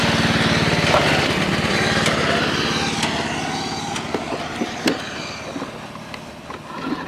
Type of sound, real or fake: real